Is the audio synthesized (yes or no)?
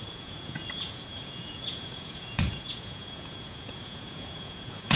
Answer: yes